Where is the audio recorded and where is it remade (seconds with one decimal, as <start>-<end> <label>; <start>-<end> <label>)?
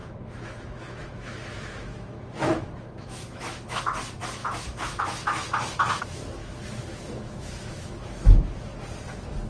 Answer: 0.0-3.8 remade; 3.8-4.4 recorded; 4.4-6.0 remade; 6.0-6.4 recorded; 6.4-8.5 remade; 8.5-9.5 recorded